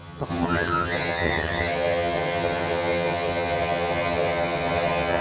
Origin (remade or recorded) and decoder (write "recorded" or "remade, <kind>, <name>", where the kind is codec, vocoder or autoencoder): remade, vocoder, HiFi-GAN